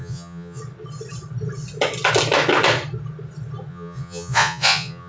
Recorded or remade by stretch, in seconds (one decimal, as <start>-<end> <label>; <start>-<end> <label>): 0.0-0.6 remade; 0.6-3.7 recorded; 3.7-5.1 remade